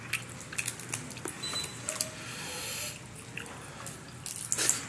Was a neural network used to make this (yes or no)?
no